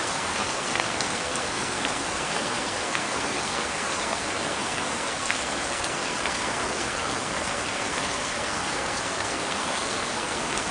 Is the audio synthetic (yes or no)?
yes